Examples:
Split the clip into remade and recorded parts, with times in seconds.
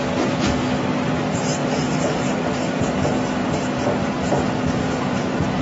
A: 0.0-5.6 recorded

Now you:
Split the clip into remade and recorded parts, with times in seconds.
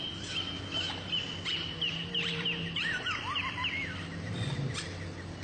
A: 0.0-1.5 recorded; 1.5-4.5 remade; 4.5-5.4 recorded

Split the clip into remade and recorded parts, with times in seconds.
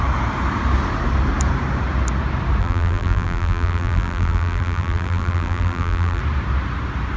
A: 0.0-2.6 recorded; 2.6-6.2 remade; 6.2-7.2 recorded